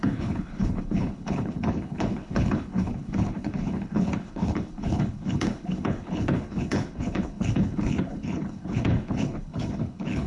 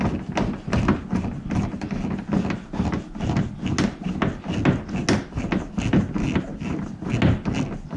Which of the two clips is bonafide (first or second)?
second